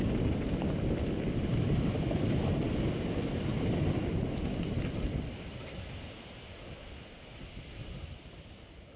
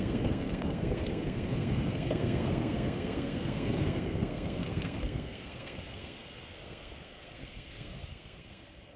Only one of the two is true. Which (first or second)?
first